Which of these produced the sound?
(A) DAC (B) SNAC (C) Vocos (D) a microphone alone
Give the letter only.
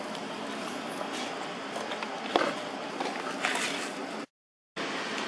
D